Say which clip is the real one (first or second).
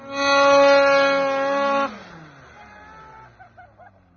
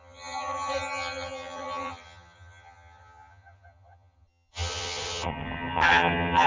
first